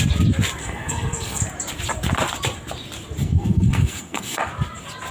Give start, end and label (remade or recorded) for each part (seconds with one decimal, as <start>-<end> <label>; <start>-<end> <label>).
0.0-0.6 recorded; 0.6-1.4 remade; 1.4-3.2 recorded; 3.2-4.5 remade; 4.5-5.1 recorded